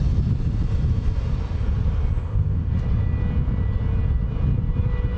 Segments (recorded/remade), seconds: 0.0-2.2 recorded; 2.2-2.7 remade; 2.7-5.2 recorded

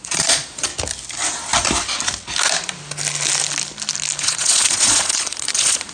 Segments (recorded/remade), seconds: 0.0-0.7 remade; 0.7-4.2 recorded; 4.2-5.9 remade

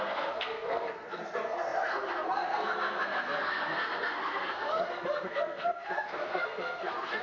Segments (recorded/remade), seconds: 0.0-7.2 remade

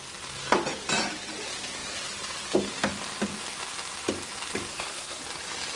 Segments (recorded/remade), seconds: 0.0-4.7 recorded; 4.7-5.2 remade; 5.2-5.8 recorded

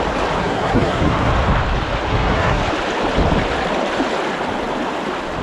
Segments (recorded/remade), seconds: 0.0-0.4 recorded; 0.4-1.3 remade; 1.3-2.1 recorded; 2.1-2.6 remade; 2.6-5.4 recorded